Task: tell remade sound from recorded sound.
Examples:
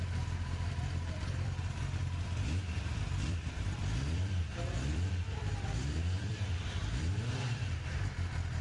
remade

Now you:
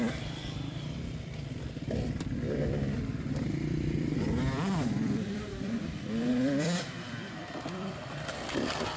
remade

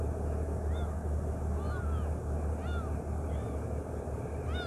recorded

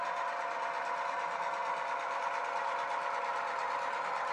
remade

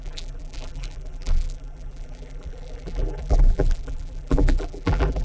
remade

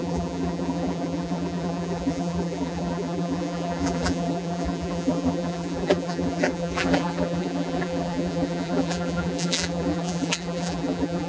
remade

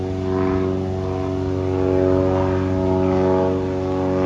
recorded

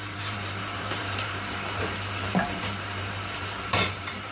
remade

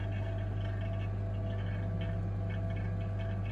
recorded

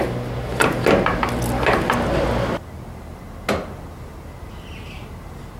recorded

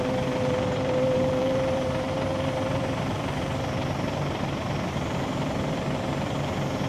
remade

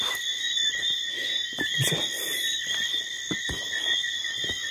remade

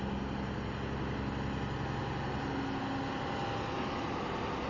recorded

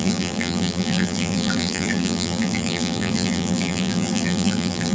remade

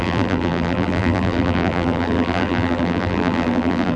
remade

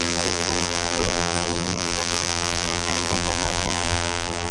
remade